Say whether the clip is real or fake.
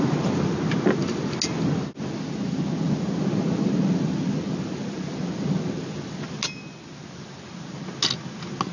real